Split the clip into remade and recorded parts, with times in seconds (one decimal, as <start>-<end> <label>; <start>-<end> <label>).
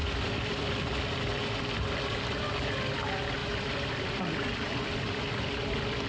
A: 0.0-1.2 remade; 1.2-3.4 recorded; 3.4-6.1 remade